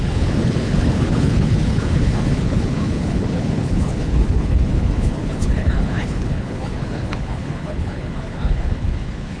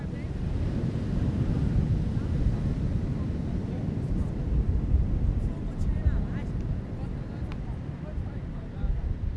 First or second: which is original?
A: second